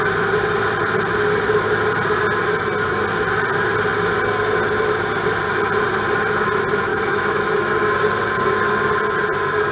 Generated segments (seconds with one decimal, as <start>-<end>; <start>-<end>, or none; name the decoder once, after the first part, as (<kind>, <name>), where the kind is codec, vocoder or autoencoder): 6.9-7.7 (autoencoder, DAC-VAE)